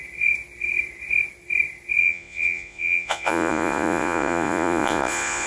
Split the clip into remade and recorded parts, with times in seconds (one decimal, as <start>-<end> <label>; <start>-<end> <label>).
0.0-2.0 recorded; 2.0-5.5 remade